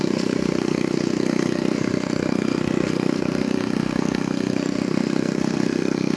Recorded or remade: remade